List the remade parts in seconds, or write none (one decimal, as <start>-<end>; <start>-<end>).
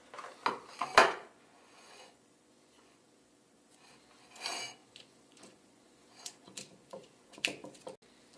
1.0-3.9; 4.8-7.4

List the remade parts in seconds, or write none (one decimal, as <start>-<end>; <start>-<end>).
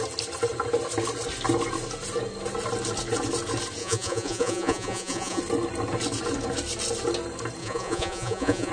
3.8-5.4; 7.6-8.7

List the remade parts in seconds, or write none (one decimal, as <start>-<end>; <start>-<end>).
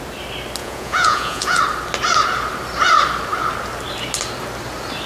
0.6-1.6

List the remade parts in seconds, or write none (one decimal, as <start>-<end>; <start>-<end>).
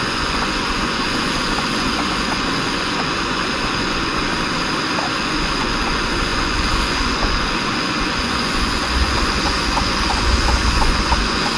0.0-4.3; 5.2-11.6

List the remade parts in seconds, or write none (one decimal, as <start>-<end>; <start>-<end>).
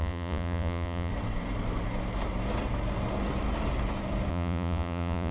0.0-1.1; 4.3-5.3